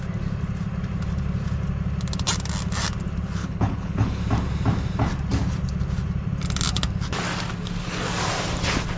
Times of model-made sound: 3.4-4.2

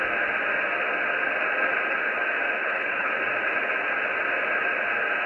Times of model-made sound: 2.6-3.1

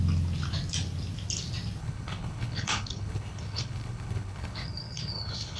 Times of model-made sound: 1.8-5.6

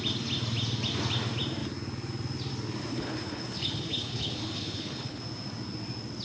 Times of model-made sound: 2.9-5.2